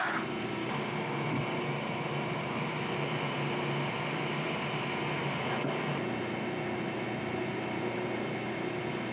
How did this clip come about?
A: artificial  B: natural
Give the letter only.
B